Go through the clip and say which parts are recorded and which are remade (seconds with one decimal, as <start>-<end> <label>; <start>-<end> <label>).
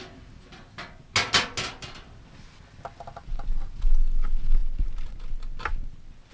0.0-6.3 recorded